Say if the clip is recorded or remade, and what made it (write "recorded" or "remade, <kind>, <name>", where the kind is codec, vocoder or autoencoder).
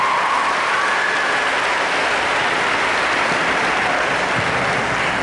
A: recorded